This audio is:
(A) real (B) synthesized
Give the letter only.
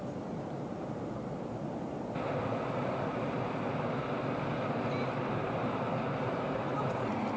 A